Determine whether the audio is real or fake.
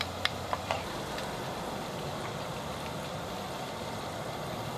fake